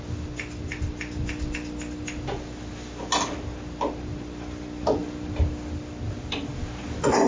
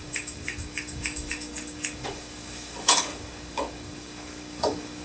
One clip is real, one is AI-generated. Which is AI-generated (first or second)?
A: second